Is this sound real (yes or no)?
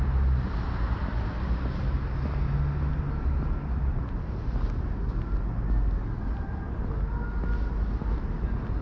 yes